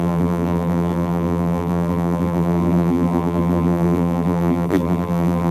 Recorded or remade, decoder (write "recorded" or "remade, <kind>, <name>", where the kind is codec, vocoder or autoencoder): remade, vocoder, BigVGAN v2